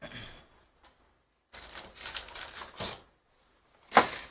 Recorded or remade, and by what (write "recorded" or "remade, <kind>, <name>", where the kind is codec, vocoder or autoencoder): recorded